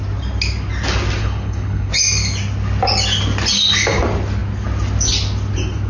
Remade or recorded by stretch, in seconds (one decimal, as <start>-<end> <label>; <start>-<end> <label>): 0.0-1.2 recorded; 1.2-1.9 remade; 1.9-5.9 recorded